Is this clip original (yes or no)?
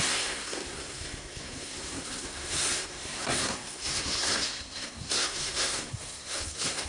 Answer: no